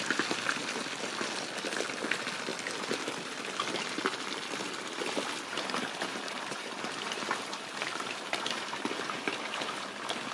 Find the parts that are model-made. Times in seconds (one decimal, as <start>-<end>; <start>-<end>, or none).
5.5-9.7

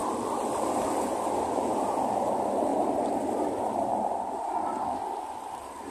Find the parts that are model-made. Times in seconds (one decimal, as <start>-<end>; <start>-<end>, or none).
2.7-5.9

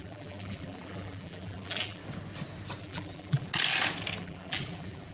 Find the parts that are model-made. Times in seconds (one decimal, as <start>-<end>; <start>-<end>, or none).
0.0-2.0; 2.8-3.5; 4.2-5.1

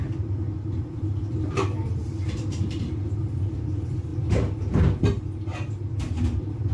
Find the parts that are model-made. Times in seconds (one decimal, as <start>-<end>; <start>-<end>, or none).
0.0-6.7

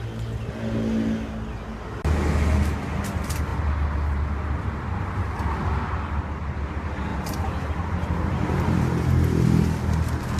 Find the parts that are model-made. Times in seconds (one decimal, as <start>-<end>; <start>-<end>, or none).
7.1-8.8

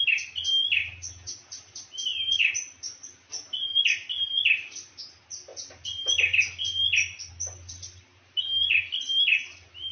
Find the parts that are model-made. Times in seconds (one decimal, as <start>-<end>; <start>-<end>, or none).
0.0-2.4; 3.7-4.3; 5.1-9.9